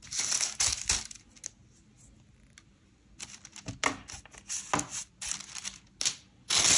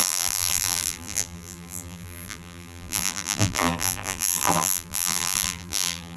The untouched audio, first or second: first